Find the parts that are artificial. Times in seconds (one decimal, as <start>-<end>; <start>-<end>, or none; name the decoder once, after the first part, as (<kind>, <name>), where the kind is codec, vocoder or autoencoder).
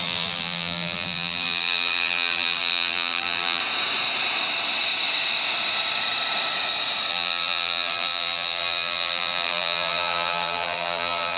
0.0-3.6 (vocoder, BigVGAN v2); 7.1-11.4